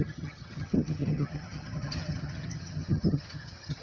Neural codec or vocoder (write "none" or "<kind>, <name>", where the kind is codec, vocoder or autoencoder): vocoder, HiFi-GAN